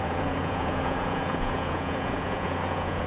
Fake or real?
fake